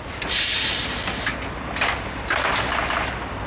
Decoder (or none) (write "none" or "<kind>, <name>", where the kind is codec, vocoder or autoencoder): none